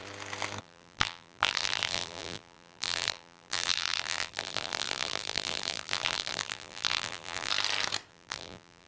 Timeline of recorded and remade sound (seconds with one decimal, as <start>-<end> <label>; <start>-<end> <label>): 0.0-0.6 recorded; 0.6-7.5 remade; 7.5-8.1 recorded; 8.1-8.9 remade